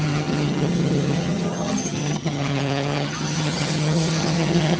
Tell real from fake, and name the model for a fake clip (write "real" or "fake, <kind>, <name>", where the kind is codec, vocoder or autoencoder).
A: fake, vocoder, HiFi-GAN